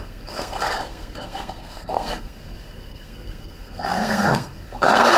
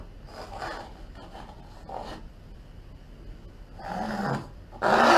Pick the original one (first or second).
second